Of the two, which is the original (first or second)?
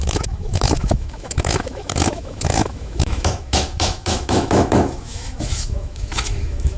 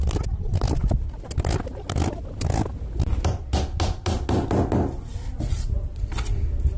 second